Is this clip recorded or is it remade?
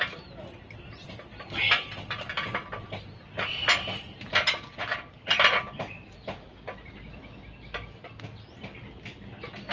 recorded